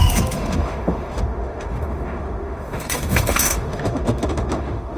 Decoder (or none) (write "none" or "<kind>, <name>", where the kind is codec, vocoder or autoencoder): autoencoder, DAC-VAE